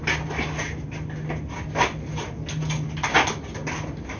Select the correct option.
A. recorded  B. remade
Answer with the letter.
A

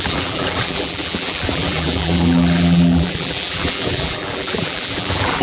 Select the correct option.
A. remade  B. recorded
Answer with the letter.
A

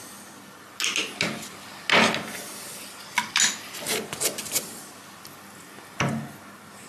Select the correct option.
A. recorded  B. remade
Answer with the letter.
A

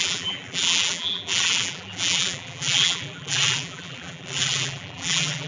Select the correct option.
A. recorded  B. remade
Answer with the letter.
B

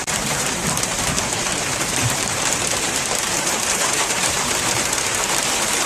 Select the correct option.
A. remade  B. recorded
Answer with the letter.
A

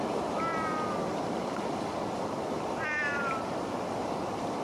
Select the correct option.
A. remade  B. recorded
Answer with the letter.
A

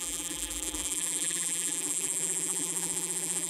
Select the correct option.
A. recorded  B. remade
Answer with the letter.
B